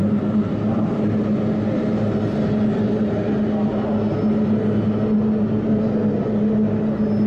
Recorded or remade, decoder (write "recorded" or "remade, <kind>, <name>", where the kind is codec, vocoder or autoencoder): recorded